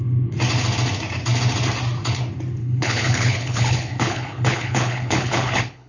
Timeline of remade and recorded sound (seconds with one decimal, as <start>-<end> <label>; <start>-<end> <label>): 0.0-2.6 recorded; 2.6-5.9 remade